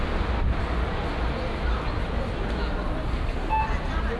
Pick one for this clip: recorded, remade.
recorded